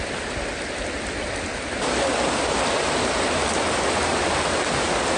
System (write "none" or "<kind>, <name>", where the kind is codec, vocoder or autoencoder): none